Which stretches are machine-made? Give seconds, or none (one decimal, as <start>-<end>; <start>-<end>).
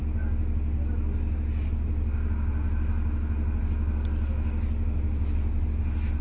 none